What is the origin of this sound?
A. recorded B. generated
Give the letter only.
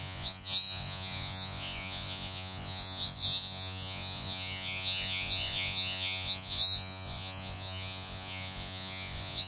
B